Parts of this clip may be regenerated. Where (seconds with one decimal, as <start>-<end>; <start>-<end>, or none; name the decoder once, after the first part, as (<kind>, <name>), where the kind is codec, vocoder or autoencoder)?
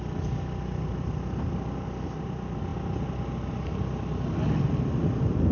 none